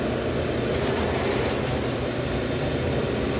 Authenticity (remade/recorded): recorded